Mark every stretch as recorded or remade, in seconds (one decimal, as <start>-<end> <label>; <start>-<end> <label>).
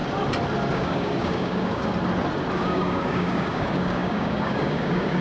0.0-0.7 recorded; 0.7-1.9 remade; 1.9-2.6 recorded; 2.6-5.2 remade